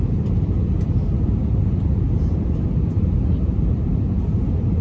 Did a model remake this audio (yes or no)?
yes